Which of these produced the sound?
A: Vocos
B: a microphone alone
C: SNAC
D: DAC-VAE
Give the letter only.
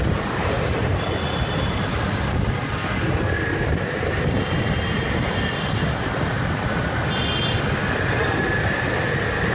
B